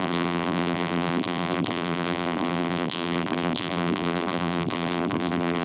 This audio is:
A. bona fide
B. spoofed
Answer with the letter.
B